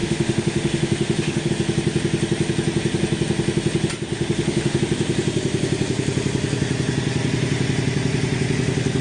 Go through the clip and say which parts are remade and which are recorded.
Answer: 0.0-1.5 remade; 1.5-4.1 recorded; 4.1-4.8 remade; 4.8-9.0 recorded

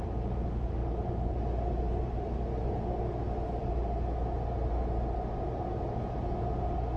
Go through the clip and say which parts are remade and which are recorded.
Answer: 0.0-7.0 recorded

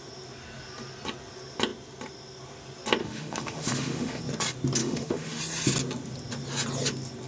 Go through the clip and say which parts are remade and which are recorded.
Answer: 0.0-3.0 recorded; 3.0-4.2 remade; 4.2-4.8 recorded; 4.8-5.4 remade; 5.4-7.3 recorded

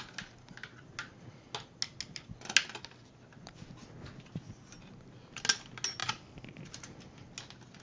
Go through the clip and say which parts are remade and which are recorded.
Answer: 0.0-7.8 recorded

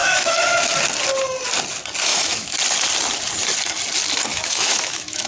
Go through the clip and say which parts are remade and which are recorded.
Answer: 0.0-0.7 remade; 0.7-2.1 recorded; 2.1-2.6 remade; 2.6-4.3 recorded; 4.3-5.3 remade

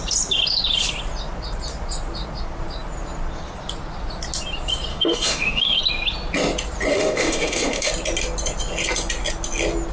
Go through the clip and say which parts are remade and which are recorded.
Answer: 0.0-4.9 recorded; 4.9-5.8 remade; 5.8-6.9 recorded; 6.9-7.9 remade; 7.9-9.9 recorded